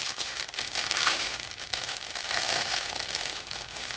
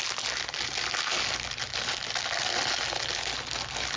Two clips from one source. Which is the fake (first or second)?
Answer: first